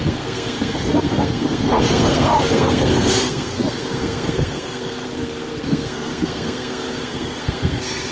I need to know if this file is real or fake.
fake